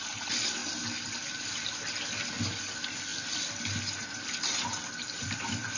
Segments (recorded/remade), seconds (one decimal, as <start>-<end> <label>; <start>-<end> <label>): 0.0-5.8 recorded